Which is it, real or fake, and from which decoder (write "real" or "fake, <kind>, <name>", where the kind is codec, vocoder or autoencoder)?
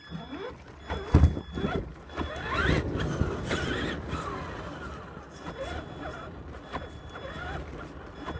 real